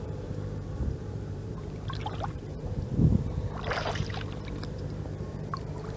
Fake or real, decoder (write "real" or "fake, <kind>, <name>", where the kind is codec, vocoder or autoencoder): fake, vocoder, BigVGAN v2